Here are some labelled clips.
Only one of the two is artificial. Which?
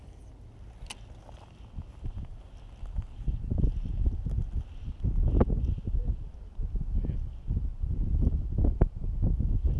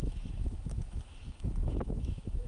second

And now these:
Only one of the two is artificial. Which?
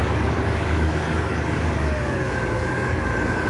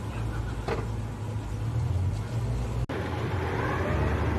first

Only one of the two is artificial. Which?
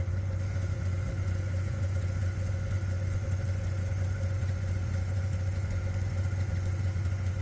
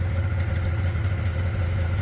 first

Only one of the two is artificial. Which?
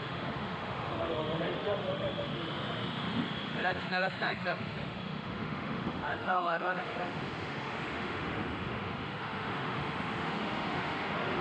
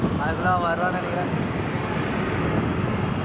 first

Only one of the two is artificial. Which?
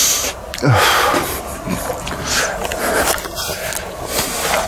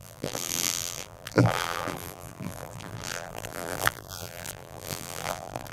second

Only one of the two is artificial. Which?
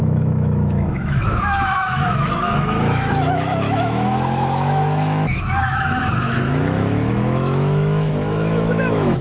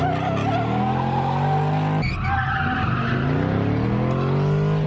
first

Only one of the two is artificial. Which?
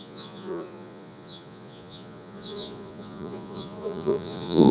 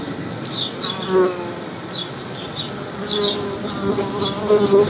first